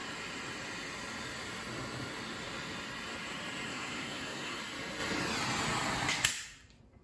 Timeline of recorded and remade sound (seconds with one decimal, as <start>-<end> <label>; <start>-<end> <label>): 0.0-3.7 recorded; 3.7-4.6 remade; 4.6-7.0 recorded